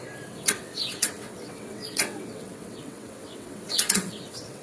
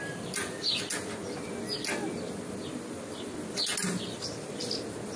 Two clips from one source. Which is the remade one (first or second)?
first